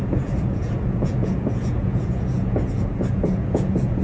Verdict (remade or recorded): remade